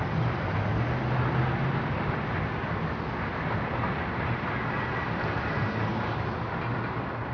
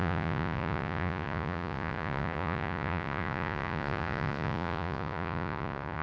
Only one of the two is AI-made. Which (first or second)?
second